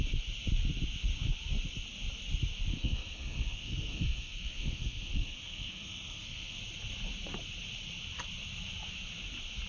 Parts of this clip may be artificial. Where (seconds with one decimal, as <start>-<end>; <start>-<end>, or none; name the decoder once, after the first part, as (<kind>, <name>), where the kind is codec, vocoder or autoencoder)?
2.7-6.6 (codec, SNAC)